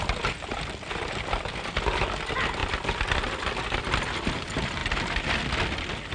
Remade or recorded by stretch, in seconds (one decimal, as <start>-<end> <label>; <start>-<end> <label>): 0.0-6.1 recorded